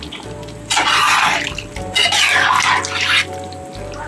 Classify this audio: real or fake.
real